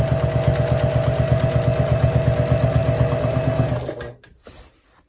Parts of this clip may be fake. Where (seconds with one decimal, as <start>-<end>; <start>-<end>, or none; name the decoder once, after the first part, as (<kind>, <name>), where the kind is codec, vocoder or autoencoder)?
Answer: none